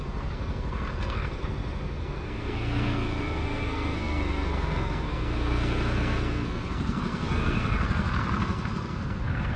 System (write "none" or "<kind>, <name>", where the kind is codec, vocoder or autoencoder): codec, SNAC